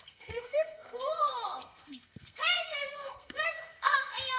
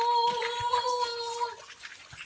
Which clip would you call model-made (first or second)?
first